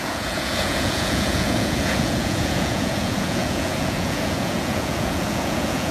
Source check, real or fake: fake